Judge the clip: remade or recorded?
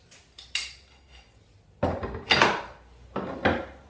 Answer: recorded